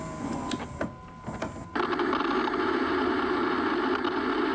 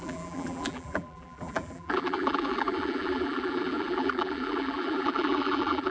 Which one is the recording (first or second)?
first